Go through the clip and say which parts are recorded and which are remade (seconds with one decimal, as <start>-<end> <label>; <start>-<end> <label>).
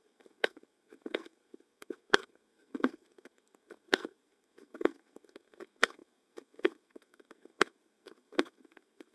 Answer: 0.0-9.1 remade